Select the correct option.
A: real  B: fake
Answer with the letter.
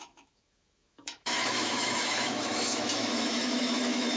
B